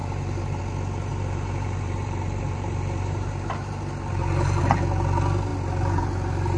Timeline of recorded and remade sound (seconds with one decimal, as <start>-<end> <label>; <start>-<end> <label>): 0.0-0.6 remade; 0.6-1.1 recorded; 1.1-4.6 remade; 4.6-6.6 recorded